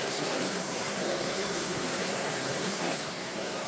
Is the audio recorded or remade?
remade